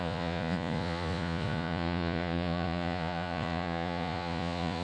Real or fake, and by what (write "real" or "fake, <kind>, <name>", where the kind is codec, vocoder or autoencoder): fake, vocoder, Vocos